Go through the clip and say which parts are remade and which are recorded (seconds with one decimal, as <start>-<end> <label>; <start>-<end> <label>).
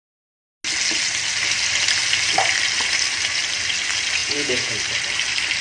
0.0-4.2 recorded; 4.2-4.7 remade; 4.7-5.6 recorded